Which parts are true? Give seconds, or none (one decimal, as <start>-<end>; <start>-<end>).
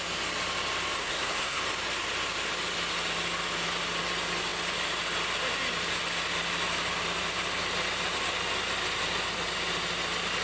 0.0-1.0; 1.6-10.4